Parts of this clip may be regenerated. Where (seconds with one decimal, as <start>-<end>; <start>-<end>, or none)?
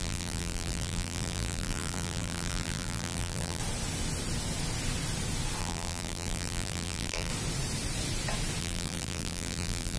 0.0-3.6; 5.6-7.3; 8.6-10.0